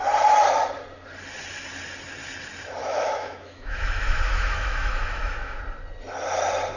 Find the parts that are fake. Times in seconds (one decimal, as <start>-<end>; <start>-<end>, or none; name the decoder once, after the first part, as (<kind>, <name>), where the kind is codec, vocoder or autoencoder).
2.8-5.6 (autoencoder, DAC-VAE)

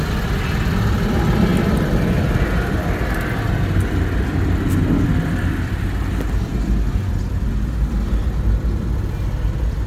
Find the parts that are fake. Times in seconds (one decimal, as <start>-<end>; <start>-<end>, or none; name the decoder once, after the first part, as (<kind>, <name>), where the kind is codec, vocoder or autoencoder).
none

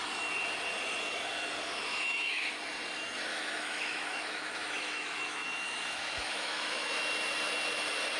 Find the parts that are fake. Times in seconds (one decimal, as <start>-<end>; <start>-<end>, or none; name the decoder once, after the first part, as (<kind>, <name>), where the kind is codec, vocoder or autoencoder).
1.9-2.4 (autoencoder, DAC-VAE); 3.3-7.0

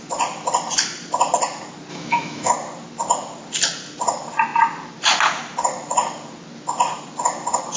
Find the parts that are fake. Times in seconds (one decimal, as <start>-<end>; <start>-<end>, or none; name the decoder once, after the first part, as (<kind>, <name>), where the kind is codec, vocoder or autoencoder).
1.9-2.5 (autoencoder, DAC-VAE)

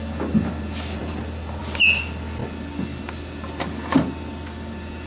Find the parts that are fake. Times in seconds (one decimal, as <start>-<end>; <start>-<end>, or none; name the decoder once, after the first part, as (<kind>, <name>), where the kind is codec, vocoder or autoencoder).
none